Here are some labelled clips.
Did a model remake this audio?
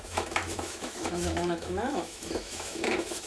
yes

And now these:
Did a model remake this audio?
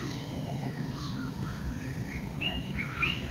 yes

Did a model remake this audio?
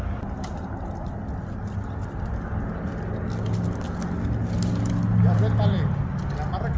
no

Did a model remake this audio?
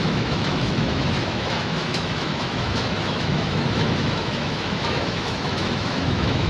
yes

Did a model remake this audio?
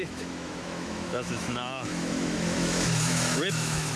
yes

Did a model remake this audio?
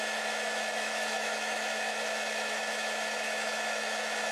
yes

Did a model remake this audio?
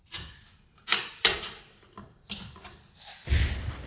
no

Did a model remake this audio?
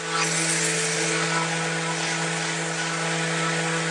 no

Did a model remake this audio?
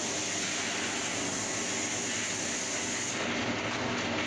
no